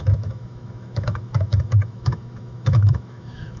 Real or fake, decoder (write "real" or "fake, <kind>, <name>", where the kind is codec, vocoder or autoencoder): fake, autoencoder, DAC-VAE